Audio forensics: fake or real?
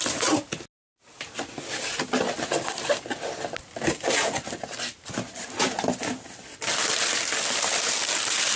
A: real